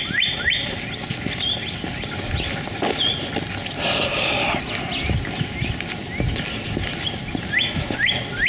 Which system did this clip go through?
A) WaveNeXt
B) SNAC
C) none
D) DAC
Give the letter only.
C